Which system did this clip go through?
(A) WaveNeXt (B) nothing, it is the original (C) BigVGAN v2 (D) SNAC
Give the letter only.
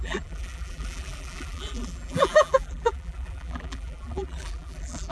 C